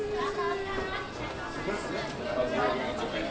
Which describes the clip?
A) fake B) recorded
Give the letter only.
B